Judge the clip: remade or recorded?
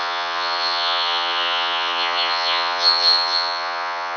remade